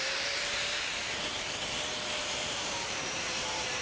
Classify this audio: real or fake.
fake